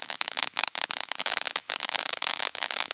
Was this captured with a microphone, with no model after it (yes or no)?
no